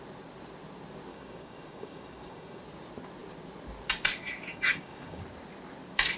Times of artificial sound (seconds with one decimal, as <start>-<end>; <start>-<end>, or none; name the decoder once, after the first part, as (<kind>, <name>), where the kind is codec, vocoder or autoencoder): 1.1-2.6 (codec, DAC); 4.5-5.2